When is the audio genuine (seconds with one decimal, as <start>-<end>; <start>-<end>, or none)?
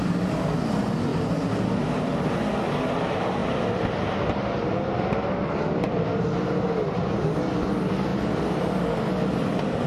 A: 0.0-3.4; 6.2-8.1